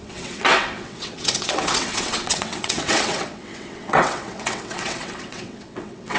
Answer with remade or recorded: remade